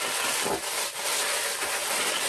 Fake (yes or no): no